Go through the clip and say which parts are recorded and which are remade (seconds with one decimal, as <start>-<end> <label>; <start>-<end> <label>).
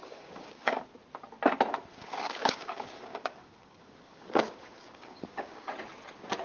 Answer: 0.0-0.8 remade; 0.8-1.9 recorded; 1.9-5.7 remade; 5.7-6.4 recorded